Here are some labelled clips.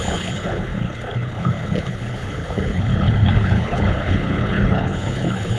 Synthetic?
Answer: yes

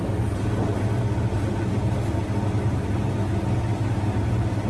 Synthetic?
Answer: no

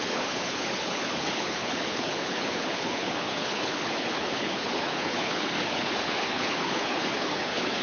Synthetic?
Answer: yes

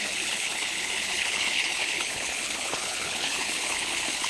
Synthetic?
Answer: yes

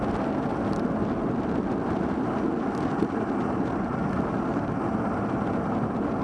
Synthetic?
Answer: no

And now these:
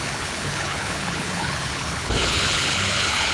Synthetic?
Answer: yes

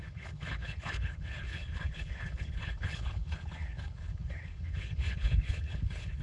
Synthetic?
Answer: yes